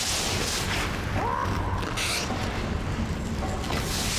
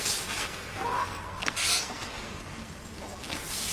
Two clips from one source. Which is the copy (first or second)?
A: second